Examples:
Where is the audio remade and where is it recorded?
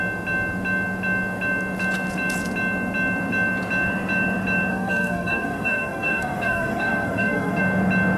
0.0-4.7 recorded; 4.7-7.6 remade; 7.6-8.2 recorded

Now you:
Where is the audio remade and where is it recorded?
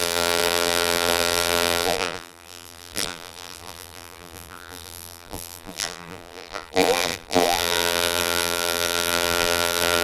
0.0-10.0 remade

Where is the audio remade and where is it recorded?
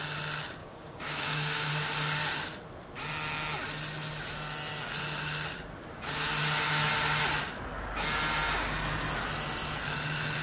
0.0-0.6 recorded; 0.6-1.7 remade; 1.7-10.4 recorded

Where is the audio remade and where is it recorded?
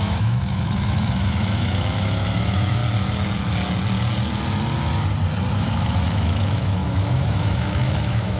0.0-2.8 remade; 2.8-5.5 recorded; 5.5-8.4 remade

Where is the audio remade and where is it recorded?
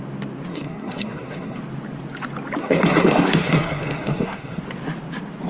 0.0-0.5 recorded; 0.5-1.6 remade; 1.6-2.6 recorded; 2.6-4.6 remade; 4.6-5.5 recorded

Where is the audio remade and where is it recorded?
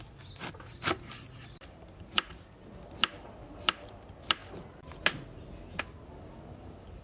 0.0-7.0 recorded